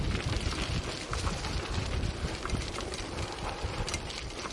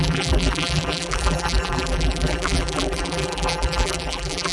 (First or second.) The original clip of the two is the first